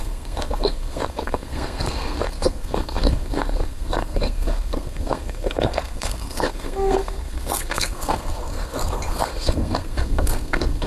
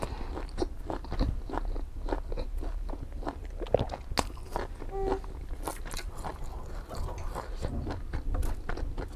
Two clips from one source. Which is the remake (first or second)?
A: first